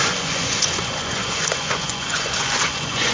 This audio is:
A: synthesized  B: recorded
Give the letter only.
A